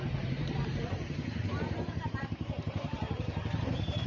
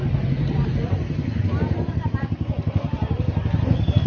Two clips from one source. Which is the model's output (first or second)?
first